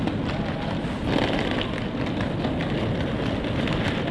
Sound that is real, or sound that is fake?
real